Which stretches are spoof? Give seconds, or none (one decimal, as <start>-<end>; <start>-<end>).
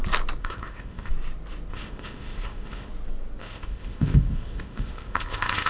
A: 0.4-1.1; 1.7-2.9; 3.4-5.7